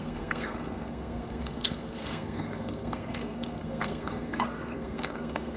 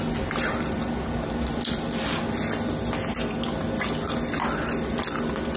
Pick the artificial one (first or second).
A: first